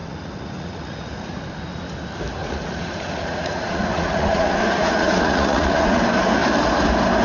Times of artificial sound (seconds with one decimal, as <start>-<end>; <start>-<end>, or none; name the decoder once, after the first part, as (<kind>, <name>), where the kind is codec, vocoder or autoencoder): 0.0-1.4 (vocoder, Vocos); 2.4-6.0